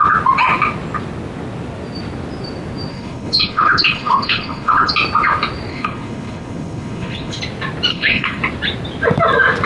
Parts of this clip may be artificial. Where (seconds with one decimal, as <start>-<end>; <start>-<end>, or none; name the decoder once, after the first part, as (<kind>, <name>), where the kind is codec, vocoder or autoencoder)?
2.9-4.9 (codec, HILCodec); 5.7-7.4; 7.9-8.4